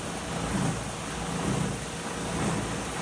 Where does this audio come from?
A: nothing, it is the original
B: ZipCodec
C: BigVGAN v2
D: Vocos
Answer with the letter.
A